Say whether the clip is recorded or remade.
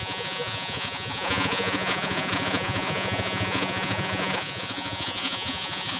remade